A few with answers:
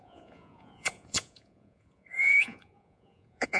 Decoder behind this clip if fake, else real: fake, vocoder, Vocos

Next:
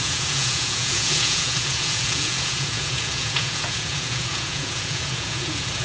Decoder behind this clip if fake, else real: fake, vocoder, Vocos